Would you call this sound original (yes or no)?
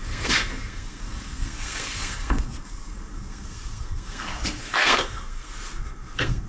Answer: no